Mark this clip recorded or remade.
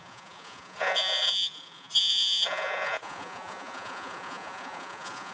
remade